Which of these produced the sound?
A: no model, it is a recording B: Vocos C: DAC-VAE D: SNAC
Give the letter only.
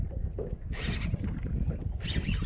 A